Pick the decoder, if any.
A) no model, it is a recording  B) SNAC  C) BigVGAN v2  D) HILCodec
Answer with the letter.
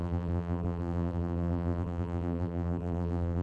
C